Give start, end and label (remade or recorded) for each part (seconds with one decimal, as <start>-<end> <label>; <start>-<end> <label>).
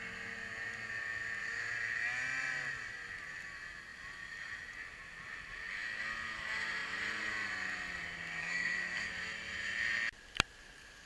0.0-8.4 recorded; 8.4-9.1 remade; 9.1-11.1 recorded